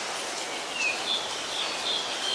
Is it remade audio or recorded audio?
recorded